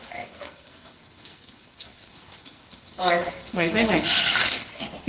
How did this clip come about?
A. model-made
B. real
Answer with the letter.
A